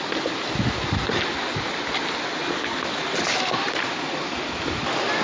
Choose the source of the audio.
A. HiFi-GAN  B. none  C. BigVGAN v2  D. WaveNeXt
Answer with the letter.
B